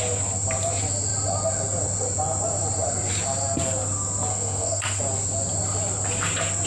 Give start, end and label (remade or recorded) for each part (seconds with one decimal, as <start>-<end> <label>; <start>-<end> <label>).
0.0-4.3 recorded; 4.3-5.0 remade; 5.0-6.7 recorded